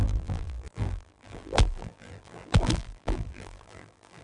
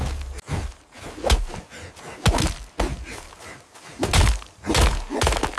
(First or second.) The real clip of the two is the second